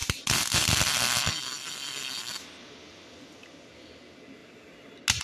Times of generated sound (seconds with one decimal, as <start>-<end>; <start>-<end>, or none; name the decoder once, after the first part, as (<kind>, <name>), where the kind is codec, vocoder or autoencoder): none